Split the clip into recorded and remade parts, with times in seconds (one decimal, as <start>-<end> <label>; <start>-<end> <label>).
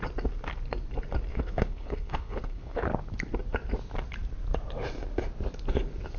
0.0-1.3 recorded; 1.3-2.9 remade; 2.9-6.2 recorded